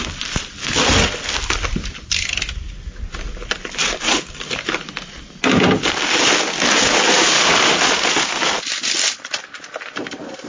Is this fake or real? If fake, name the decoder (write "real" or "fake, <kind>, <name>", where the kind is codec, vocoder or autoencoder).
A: real